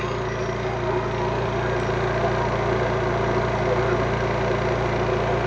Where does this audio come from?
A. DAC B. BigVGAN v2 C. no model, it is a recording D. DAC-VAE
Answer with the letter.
C